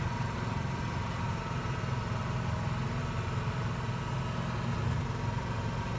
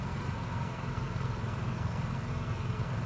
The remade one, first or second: second